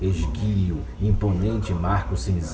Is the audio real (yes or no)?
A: yes